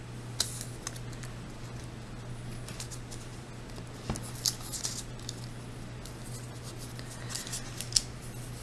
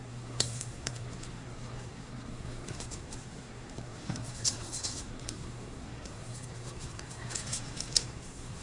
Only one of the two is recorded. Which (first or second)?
first